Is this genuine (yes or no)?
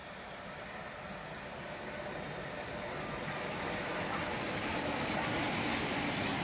yes